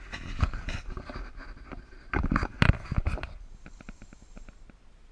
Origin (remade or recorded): recorded